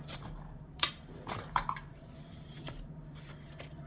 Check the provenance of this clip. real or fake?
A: fake